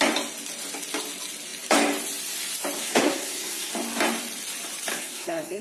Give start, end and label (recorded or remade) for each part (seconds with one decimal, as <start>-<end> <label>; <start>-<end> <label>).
0.0-2.8 recorded; 2.8-3.7 remade; 3.7-4.9 recorded; 4.9-5.6 remade